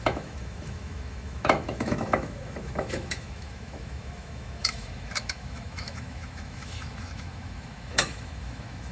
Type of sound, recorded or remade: remade